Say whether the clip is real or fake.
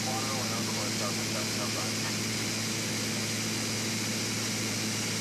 real